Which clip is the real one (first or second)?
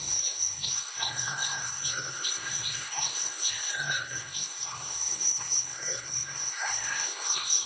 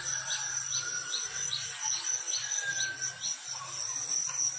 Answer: second